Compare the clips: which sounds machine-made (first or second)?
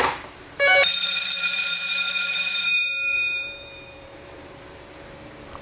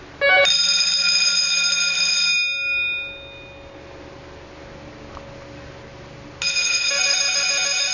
first